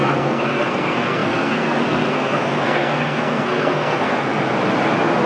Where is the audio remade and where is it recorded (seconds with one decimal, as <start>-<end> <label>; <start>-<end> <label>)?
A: 0.0-4.3 remade; 4.3-5.3 recorded